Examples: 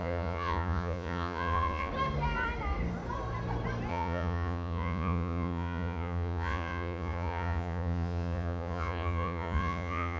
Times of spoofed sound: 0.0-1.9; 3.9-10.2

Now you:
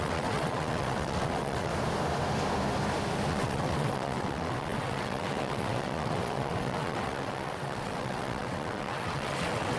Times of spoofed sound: 0.0-1.7; 3.3-9.8